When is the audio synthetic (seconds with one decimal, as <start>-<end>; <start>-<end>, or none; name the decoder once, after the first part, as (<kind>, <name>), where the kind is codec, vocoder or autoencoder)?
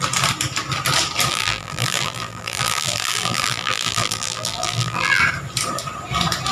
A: 1.3-5.2 (vocoder, BigVGAN v2)